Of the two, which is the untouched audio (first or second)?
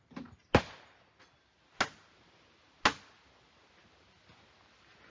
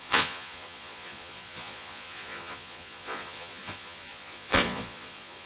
first